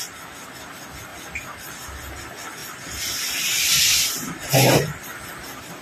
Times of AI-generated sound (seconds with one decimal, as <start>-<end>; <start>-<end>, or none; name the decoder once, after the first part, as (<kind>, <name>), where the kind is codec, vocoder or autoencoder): 1.1-1.7 (vocoder, BigVGAN v2); 2.6-4.1; 5.1-5.8